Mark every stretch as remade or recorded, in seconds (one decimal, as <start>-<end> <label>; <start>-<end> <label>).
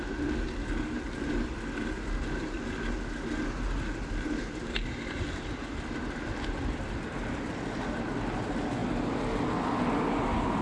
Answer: 0.0-10.6 recorded